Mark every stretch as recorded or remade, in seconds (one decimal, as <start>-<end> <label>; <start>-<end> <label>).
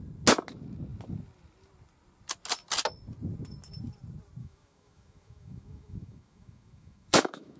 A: 0.0-4.4 recorded; 4.4-7.6 remade